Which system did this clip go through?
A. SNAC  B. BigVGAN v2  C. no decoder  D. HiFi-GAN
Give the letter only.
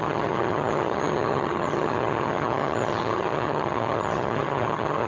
D